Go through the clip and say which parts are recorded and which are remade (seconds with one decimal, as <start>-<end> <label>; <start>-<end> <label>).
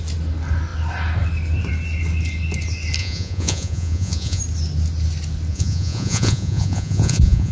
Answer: 0.0-3.0 recorded; 3.0-4.4 remade; 4.4-5.5 recorded; 5.5-7.5 remade